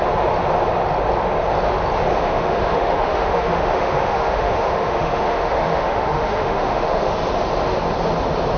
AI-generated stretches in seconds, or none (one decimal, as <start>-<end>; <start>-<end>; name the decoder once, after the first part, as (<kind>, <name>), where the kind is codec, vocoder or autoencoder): 2.1-7.1 (autoencoder, DAC-VAE)